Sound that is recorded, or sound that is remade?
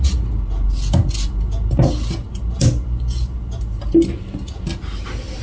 recorded